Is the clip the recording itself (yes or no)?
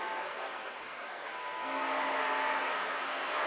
no